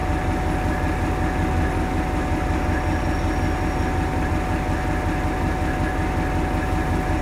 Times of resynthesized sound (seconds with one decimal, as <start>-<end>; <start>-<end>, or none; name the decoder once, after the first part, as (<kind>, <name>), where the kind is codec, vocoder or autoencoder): none